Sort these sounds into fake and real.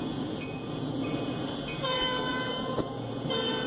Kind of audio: fake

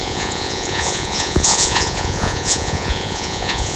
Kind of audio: fake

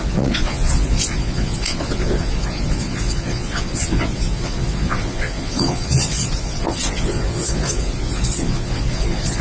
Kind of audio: fake